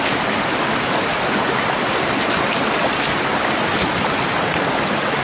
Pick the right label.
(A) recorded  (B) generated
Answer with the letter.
A